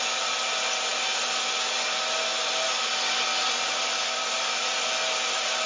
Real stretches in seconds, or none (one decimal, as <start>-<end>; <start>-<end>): 0.0-5.7